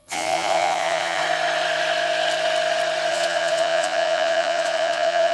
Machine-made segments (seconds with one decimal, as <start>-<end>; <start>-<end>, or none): 0.0-1.2; 3.1-5.3